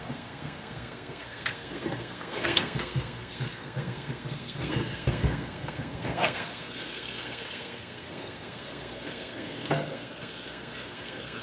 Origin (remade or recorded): remade